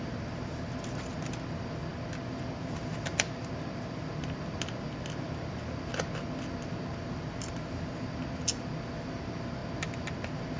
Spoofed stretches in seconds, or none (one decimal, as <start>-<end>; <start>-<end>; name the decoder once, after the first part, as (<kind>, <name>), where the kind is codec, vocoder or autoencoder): none